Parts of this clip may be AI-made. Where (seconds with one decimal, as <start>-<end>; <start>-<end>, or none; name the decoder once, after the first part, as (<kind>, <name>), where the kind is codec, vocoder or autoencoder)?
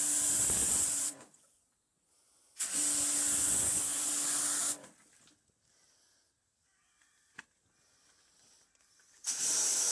0.6-2.8 (vocoder, Vocos); 3.4-4.1